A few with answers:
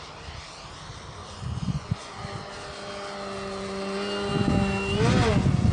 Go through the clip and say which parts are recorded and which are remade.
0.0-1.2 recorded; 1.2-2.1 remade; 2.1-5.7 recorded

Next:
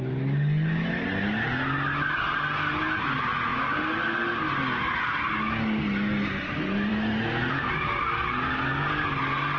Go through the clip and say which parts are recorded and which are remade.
0.0-9.6 recorded

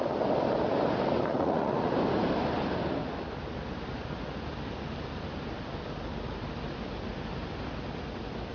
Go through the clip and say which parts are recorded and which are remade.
0.0-1.3 recorded; 1.3-1.9 remade; 1.9-8.5 recorded

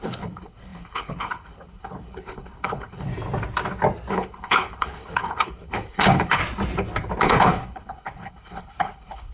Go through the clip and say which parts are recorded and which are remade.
0.0-3.1 remade; 3.1-4.1 recorded; 4.1-6.4 remade; 6.4-7.2 recorded; 7.2-9.3 remade

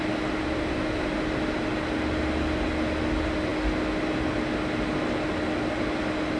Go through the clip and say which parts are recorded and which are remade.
0.0-6.4 recorded

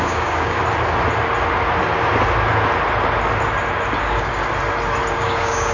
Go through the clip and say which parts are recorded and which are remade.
0.0-0.6 remade; 0.6-4.0 recorded; 4.0-4.4 remade; 4.4-5.1 recorded; 5.1-5.7 remade